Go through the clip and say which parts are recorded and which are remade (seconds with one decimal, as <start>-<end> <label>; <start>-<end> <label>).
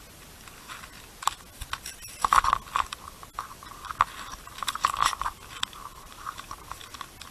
0.0-5.9 recorded; 5.9-6.8 remade; 6.8-7.3 recorded